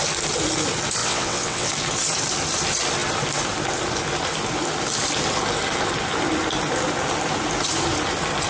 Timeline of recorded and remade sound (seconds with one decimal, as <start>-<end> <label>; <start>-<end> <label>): 0.0-1.0 recorded; 1.0-1.7 remade; 1.7-8.5 recorded